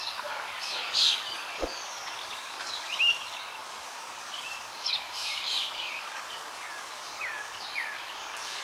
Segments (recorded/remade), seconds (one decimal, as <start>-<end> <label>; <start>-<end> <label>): 0.0-8.6 remade